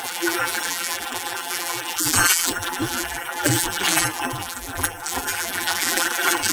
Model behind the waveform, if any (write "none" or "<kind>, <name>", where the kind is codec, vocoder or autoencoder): vocoder, BigVGAN v2